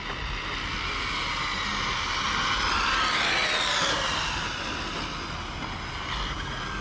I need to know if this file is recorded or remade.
recorded